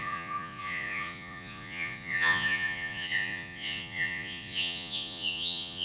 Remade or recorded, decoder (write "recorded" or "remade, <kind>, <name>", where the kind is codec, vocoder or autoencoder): remade, vocoder, Vocos